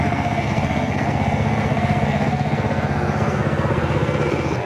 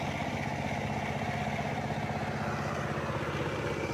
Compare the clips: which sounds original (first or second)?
second